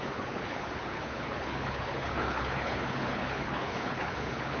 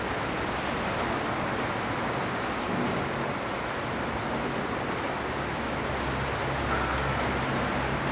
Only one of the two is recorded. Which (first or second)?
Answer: second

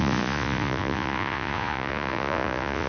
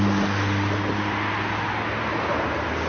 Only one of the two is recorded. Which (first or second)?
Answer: second